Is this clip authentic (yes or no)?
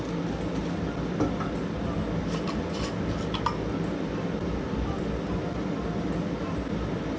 yes